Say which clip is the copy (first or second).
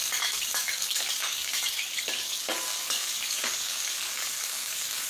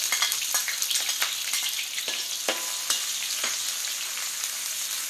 first